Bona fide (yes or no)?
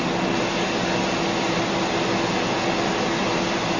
yes